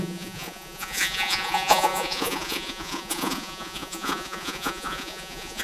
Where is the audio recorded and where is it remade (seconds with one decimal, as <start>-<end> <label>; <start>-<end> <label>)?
0.0-5.6 remade